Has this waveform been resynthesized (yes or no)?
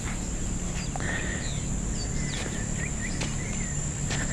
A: no